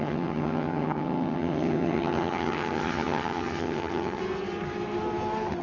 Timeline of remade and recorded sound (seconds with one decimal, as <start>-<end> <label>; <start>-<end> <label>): 0.0-4.2 remade; 4.2-5.6 recorded